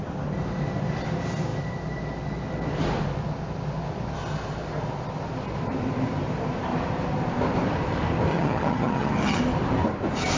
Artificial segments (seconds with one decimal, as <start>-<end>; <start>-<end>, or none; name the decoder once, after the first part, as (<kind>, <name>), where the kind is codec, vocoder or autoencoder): 8.3-9.4 (vocoder, HiFi-GAN)

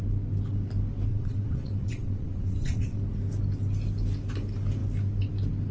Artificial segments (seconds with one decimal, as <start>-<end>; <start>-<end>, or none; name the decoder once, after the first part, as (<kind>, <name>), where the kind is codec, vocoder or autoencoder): 1.1-3.0 (vocoder, WaveNeXt)

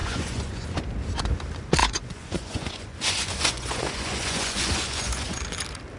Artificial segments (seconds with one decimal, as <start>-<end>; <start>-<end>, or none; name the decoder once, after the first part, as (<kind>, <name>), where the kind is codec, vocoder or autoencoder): 0.0-0.8 (vocoder, Vocos); 1.8-5.4

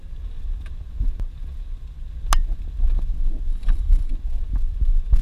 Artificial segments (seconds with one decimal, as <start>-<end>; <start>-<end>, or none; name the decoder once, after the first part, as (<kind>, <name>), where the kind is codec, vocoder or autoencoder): 3.5-4.1 (vocoder, BigVGAN v2)

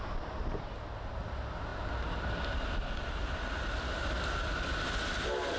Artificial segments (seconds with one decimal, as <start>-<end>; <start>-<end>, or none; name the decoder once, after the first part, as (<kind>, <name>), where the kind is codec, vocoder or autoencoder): none

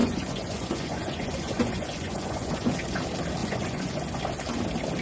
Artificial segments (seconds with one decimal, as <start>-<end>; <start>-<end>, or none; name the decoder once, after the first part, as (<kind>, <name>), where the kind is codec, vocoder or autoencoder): 0.0-3.0 (vocoder, Vocos); 3.4-4.2

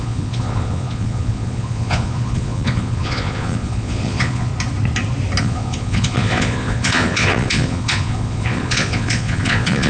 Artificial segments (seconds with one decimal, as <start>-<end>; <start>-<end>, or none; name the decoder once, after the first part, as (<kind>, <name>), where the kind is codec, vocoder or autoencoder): 0.0-4.5 (vocoder, Vocos); 5.4-9.9

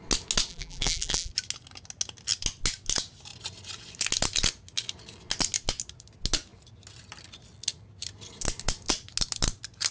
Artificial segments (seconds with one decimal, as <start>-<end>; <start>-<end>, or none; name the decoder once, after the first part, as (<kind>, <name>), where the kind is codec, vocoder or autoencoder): 0.5-1.3 (vocoder, BigVGAN v2)